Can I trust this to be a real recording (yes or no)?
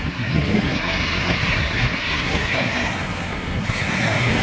no